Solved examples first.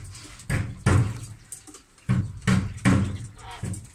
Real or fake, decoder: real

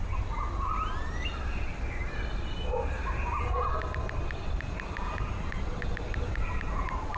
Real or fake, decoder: real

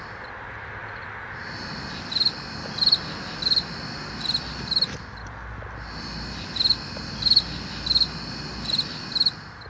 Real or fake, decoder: real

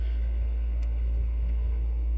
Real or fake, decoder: fake, codec, SNAC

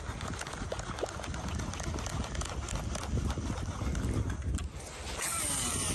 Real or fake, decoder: real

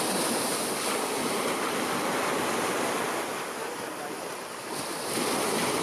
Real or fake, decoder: real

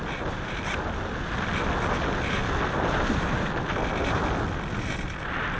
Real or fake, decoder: real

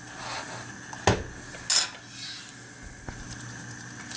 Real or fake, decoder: real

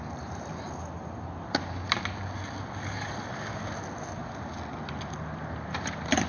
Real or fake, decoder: real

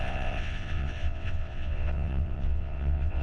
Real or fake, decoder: fake, vocoder, WaveNeXt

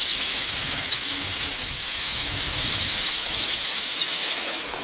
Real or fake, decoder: fake, autoencoder, DAC-VAE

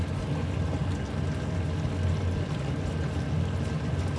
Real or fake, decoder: real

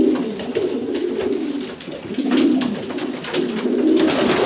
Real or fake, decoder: real